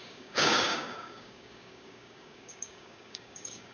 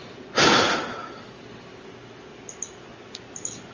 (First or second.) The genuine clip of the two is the second